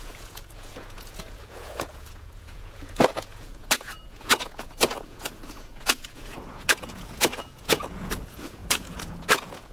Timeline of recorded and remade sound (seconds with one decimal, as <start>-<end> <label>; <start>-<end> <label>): 0.0-9.7 remade